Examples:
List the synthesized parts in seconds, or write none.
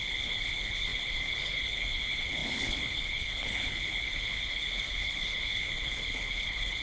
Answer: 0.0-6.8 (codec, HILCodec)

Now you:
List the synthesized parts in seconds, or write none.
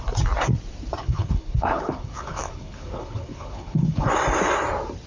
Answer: 1.0-4.1 (codec, HILCodec)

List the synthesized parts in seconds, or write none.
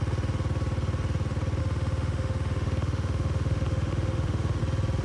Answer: 1.6-4.6 (autoencoder, DAC-VAE)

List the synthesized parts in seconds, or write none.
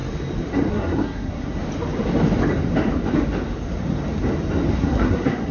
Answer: 0.7-1.6 (codec, SNAC); 4.8-5.5